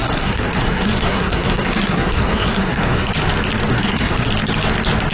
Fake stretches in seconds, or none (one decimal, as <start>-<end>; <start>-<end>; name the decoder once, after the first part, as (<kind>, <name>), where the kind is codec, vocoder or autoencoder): 0.0-3.1 (codec, SNAC); 3.7-4.3